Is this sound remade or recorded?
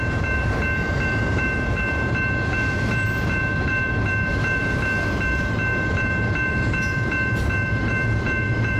remade